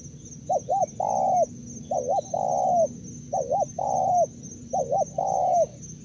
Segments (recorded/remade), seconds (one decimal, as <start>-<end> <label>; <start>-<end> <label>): 0.0-2.8 recorded; 2.8-5.5 remade; 5.5-6.0 recorded